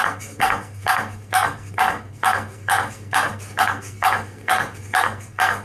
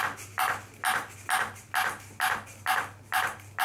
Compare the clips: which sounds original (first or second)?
second